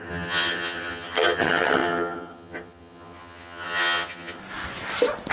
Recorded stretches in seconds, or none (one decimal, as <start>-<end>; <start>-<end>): 4.4-5.3